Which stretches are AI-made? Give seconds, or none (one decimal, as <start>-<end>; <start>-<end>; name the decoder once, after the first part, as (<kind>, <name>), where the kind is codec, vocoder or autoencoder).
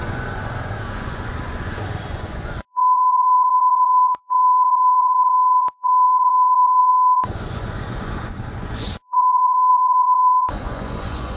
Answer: 0.0-11.4 (vocoder, Vocos)